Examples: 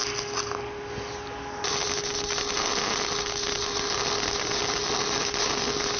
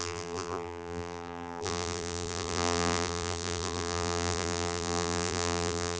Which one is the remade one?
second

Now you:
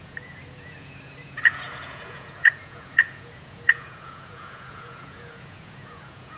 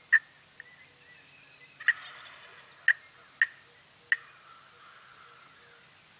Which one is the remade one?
first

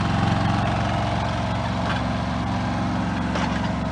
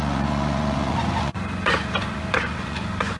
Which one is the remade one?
second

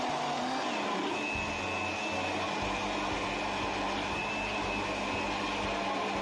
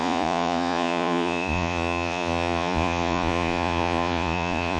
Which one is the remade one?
second